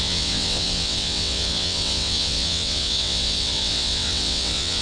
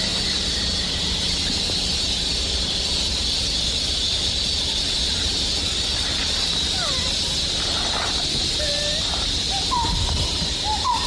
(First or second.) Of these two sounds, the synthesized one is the first